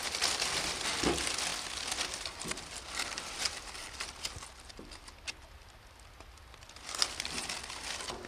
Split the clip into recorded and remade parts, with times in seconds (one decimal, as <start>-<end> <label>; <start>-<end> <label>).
0.0-8.3 recorded